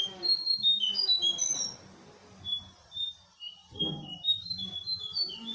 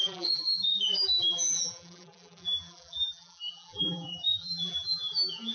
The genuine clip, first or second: first